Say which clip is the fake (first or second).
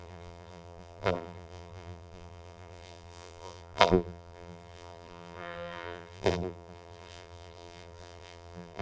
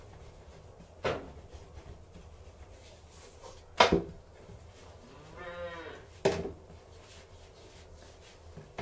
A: first